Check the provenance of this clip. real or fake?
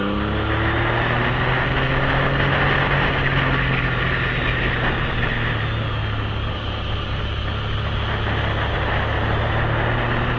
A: real